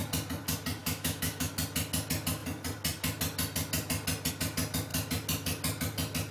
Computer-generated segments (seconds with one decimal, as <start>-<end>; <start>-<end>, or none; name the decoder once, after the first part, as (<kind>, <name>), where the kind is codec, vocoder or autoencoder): 0.8-1.5 (autoencoder, DAC-VAE)